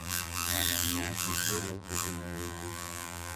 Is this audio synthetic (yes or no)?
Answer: yes